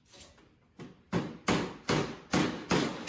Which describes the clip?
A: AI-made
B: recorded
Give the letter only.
B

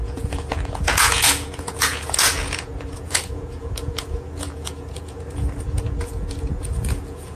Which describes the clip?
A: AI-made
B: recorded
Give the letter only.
A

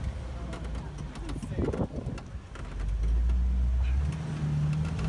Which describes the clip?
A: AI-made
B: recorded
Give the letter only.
B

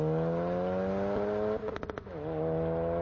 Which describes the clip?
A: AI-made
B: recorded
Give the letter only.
B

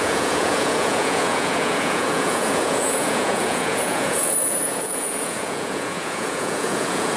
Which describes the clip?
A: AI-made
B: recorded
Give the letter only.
A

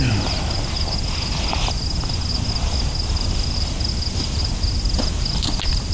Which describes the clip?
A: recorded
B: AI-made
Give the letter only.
A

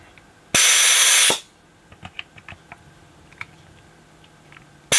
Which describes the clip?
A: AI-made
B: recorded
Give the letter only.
B